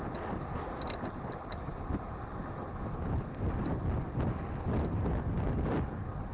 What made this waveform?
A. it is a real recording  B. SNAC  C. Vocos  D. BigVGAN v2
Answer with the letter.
A